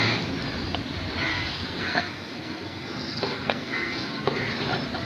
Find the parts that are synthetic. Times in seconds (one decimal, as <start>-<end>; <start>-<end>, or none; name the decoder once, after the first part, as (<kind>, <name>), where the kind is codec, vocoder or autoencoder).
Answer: 1.3-4.4 (codec, SNAC)